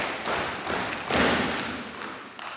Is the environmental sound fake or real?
real